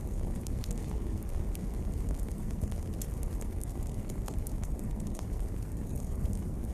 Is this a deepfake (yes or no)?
yes